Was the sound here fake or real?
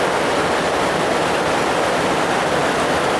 real